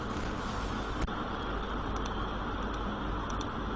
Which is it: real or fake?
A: real